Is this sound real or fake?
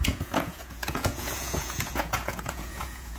fake